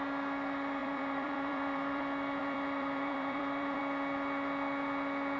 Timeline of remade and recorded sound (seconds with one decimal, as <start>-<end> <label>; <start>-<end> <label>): 0.0-0.8 recorded; 0.8-2.0 remade; 2.0-2.4 recorded; 2.4-3.8 remade; 3.8-5.4 recorded